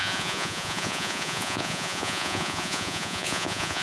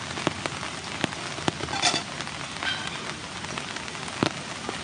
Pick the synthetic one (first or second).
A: first